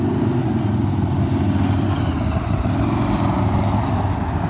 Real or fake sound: real